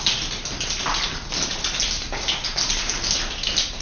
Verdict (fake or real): real